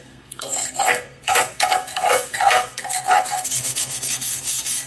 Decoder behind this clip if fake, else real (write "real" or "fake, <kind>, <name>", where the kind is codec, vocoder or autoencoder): fake, codec, SNAC